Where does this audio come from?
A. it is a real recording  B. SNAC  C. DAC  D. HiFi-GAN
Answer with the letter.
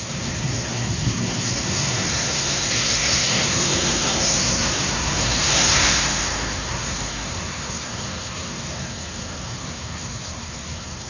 B